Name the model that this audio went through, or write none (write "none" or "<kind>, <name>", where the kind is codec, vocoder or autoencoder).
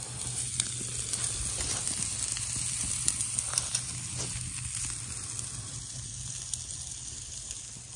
none